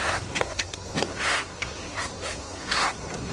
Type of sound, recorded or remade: remade